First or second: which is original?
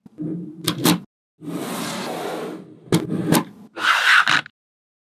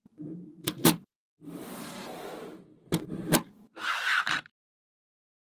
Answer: first